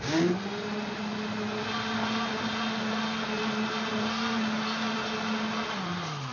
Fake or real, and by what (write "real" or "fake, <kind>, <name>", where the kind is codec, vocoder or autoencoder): real